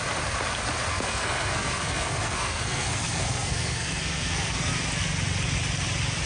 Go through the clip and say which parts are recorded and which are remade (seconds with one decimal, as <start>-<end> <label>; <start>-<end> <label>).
0.0-0.9 recorded; 0.9-4.7 remade; 4.7-6.3 recorded